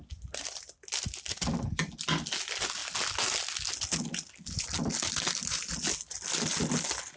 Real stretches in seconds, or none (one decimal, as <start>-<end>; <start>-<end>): 0.0-7.2